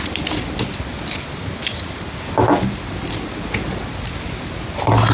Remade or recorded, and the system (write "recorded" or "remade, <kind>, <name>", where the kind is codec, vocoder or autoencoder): recorded